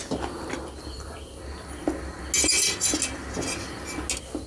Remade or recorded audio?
recorded